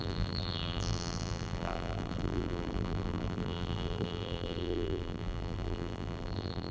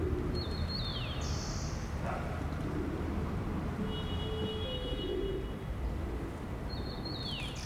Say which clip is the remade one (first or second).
first